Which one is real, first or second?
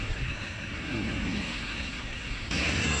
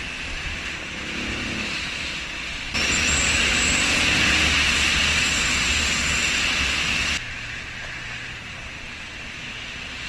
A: second